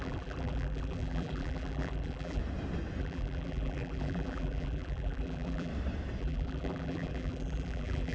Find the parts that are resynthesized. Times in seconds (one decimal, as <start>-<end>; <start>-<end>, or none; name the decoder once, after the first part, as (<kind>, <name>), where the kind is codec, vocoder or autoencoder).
0.0-2.4 (vocoder, BigVGAN v2); 3.0-5.7; 6.2-8.1